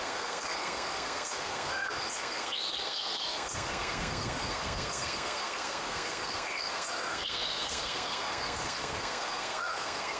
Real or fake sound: fake